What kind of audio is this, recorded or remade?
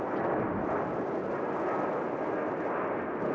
recorded